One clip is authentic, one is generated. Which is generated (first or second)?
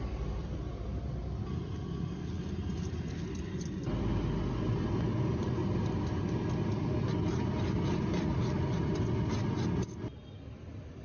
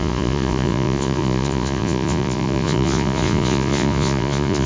second